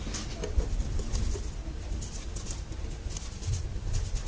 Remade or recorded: recorded